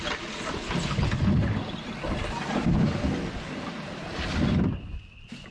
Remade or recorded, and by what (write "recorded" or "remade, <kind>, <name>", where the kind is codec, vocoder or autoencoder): recorded